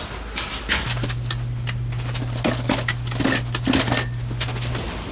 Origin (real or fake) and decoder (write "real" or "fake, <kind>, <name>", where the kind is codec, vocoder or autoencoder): real